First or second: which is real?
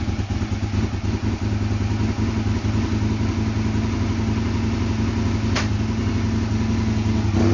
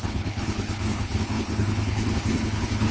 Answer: first